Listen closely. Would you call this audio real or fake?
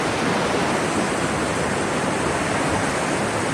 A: real